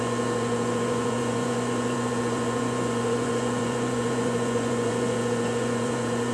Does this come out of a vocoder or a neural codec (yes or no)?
yes